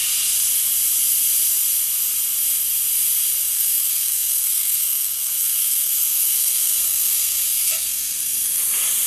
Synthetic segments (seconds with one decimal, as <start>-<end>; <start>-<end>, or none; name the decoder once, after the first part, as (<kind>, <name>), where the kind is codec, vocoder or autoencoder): 3.4-8.6 (codec, SNAC)